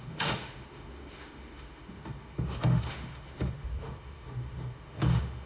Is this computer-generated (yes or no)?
yes